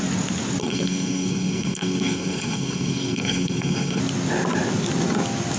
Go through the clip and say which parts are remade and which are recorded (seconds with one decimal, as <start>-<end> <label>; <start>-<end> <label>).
0.0-0.6 recorded; 0.6-4.0 remade; 4.0-5.6 recorded